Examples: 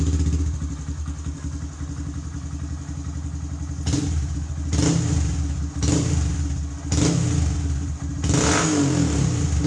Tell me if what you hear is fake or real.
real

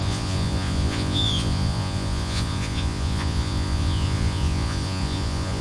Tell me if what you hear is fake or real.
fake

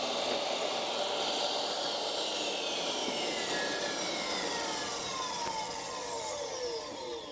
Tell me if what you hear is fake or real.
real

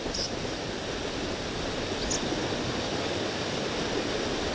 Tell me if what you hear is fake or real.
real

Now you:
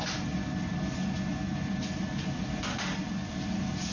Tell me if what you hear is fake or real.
real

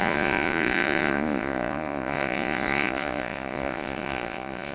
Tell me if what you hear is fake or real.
fake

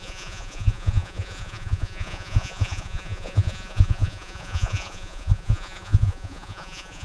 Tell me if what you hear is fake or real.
fake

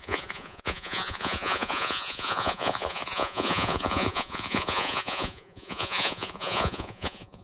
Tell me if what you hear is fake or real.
fake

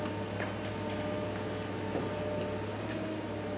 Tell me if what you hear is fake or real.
real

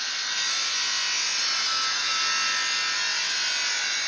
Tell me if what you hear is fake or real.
real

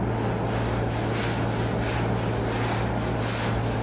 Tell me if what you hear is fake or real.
real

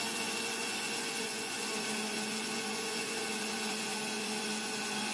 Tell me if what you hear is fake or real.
fake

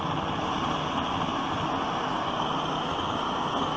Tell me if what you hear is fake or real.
real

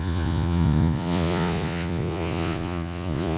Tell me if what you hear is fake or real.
fake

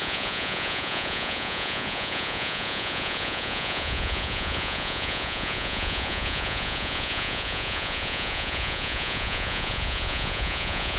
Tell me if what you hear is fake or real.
fake